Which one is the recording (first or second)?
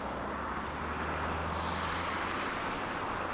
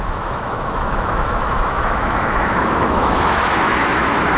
first